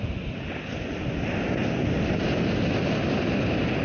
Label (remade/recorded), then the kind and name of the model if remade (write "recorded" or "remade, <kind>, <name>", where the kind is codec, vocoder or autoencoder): recorded